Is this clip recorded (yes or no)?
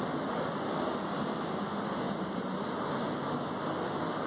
yes